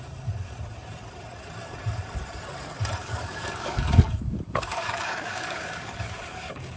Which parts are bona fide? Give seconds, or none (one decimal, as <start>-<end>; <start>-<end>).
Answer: 0.0-3.0